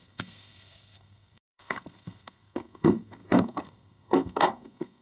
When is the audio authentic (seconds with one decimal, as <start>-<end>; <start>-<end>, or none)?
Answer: none